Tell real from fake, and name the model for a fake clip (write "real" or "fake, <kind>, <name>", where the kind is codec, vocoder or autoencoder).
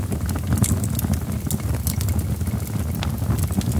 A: real